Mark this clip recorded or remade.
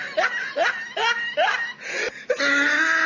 recorded